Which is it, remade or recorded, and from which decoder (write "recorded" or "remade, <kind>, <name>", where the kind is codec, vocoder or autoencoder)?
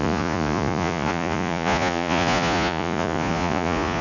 remade, vocoder, Vocos